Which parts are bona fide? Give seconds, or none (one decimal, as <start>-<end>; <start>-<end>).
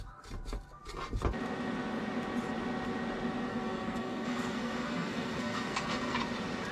0.0-3.5; 6.2-6.7